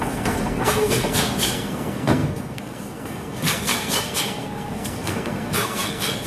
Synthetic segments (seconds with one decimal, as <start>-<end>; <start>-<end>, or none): 0.0-6.3